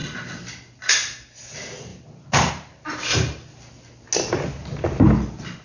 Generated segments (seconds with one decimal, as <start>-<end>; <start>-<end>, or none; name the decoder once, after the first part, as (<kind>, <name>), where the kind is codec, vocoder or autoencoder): none